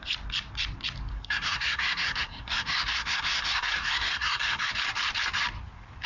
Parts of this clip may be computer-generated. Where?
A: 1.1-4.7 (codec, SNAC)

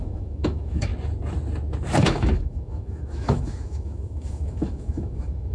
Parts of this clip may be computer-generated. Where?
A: 0.0-0.9 (autoencoder, DAC-VAE); 2.0-5.5

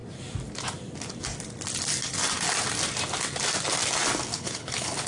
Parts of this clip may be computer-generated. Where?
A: 4.3-5.1 (codec, HILCodec)

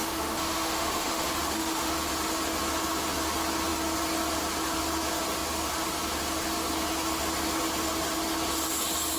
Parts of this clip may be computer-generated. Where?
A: 0.0-1.9 (autoencoder, DAC-VAE)

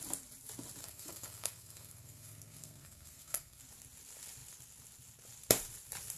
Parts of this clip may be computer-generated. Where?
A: 0.8-3.6 (codec, SNAC)

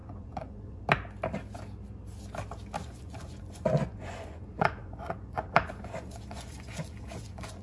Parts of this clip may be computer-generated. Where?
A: 0.0-0.8 (vocoder, Vocos); 2.8-7.6

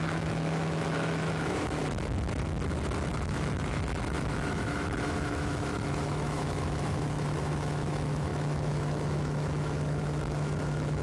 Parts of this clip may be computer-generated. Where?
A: 0.0-1.8 (autoencoder, DAC-VAE); 3.1-11.0